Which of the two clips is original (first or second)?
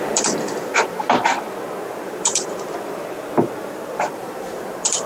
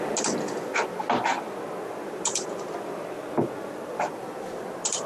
second